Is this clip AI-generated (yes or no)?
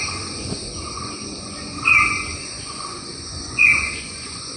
yes